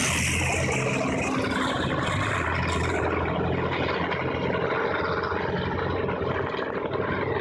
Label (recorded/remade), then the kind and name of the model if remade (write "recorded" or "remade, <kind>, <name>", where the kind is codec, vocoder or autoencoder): recorded